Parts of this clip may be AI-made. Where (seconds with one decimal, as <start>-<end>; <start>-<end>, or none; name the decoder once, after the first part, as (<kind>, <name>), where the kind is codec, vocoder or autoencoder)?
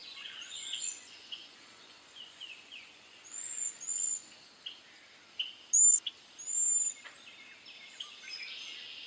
0.0-4.5 (vocoder, Vocos)